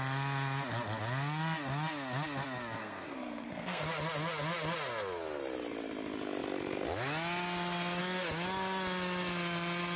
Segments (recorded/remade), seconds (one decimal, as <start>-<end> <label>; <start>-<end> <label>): 0.0-2.8 recorded; 2.8-3.8 remade; 3.8-10.0 recorded